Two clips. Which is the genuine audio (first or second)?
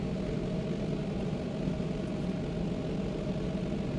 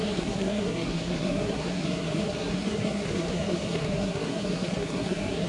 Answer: first